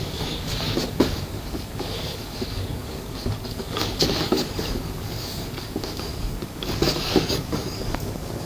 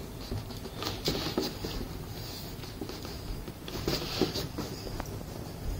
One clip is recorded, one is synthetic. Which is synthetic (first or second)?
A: first